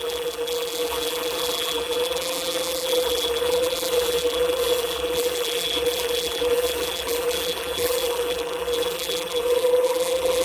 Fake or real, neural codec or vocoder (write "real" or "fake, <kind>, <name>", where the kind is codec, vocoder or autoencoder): fake, vocoder, BigVGAN v2